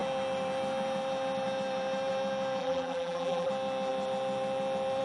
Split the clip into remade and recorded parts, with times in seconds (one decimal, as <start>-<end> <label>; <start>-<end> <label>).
0.0-2.6 recorded; 2.6-3.5 remade; 3.5-5.0 recorded